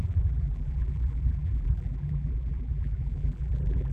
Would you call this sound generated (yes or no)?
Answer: yes